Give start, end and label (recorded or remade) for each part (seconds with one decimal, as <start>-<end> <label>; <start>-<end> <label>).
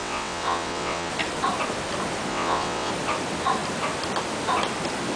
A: 0.0-1.1 remade; 1.1-2.3 recorded; 2.3-2.9 remade; 2.9-5.2 recorded